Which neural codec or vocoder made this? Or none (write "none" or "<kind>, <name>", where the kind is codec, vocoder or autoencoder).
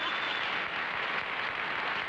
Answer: none